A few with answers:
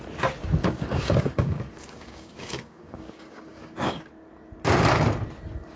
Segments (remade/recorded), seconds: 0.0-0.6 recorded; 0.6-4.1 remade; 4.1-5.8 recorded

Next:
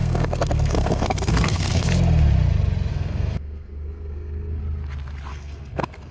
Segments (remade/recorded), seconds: 0.0-1.9 remade; 1.9-2.9 recorded; 2.9-4.6 remade; 4.6-5.3 recorded; 5.3-6.1 remade

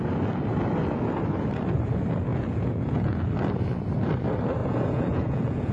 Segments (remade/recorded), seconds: 0.0-2.3 recorded; 2.3-3.2 remade; 3.2-4.6 recorded; 4.6-5.7 remade

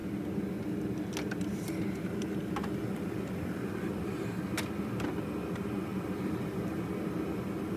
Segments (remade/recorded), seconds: 0.0-1.5 recorded; 1.5-4.4 remade; 4.4-5.9 recorded; 5.9-6.8 remade; 6.8-7.8 recorded

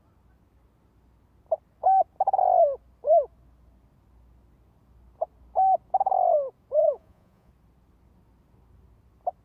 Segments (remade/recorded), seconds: 0.0-6.8 recorded; 6.8-7.5 remade; 7.5-9.4 recorded

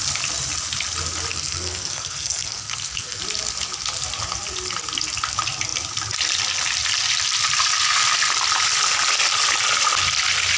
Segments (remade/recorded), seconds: 0.0-1.3 recorded; 1.3-3.2 remade; 3.2-10.6 recorded

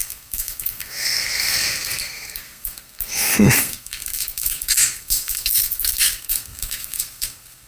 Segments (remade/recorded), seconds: 0.0-7.7 remade